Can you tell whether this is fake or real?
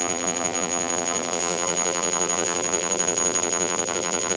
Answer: fake